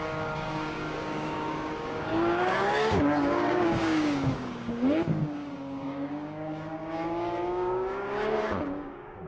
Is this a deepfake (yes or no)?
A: yes